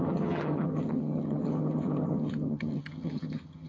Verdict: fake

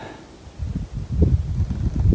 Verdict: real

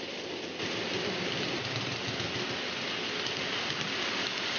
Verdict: real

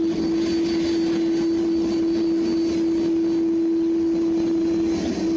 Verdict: real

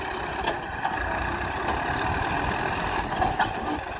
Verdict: real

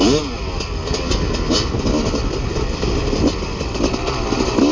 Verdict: real